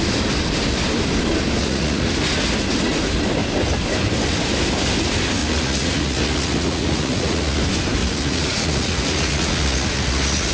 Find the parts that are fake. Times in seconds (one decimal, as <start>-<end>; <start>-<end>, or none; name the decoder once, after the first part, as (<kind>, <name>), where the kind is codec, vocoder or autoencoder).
1.6-2.1 (vocoder, Vocos); 5.4-7.6; 8.0-10.5